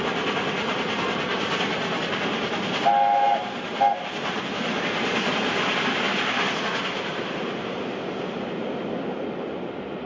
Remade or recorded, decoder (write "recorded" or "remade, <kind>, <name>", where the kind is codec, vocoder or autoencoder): recorded